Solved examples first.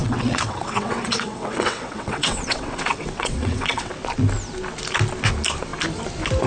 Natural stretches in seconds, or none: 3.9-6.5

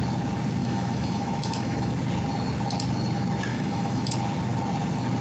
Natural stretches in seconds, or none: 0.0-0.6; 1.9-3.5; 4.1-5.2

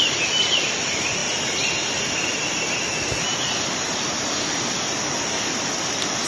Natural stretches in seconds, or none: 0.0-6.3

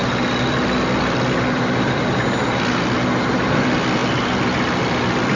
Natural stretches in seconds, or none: 0.0-5.3

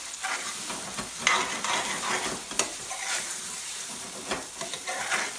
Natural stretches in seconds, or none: 0.0-2.7; 4.2-5.4